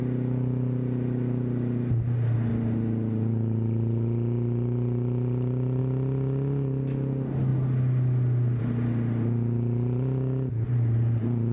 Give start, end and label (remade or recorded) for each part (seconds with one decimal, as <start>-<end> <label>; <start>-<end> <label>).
0.0-11.5 recorded